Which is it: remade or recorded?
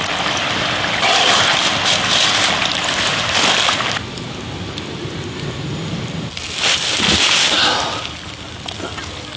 recorded